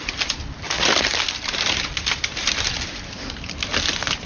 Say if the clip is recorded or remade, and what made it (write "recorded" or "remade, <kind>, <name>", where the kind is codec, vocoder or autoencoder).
recorded